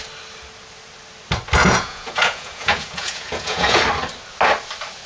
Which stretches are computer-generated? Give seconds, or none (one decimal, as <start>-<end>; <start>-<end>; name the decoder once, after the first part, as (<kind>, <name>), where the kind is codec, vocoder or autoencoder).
1.6-3.8 (vocoder, Vocos)